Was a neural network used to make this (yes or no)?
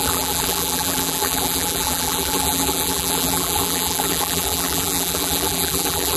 yes